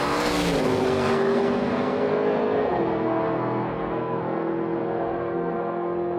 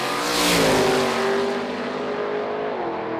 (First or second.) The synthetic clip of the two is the first